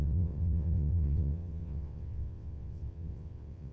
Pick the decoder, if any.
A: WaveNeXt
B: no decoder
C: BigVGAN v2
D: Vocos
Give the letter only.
A